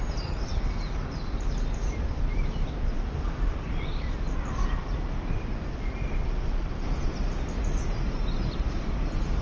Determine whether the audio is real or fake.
real